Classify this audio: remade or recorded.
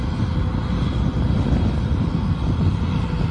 recorded